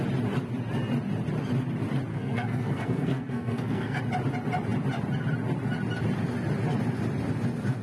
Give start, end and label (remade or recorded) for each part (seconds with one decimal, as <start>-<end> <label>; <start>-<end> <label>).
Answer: 0.0-2.1 recorded; 2.1-4.0 remade; 4.0-7.8 recorded